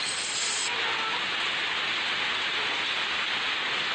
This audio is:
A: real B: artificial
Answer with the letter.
B